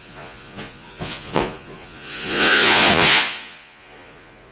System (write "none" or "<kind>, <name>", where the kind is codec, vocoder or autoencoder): vocoder, Vocos